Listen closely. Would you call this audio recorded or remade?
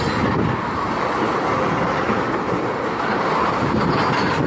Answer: recorded